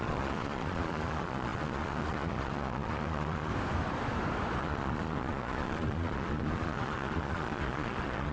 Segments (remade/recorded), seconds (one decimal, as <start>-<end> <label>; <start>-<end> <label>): 0.0-3.5 remade; 3.5-4.6 recorded; 4.6-8.3 remade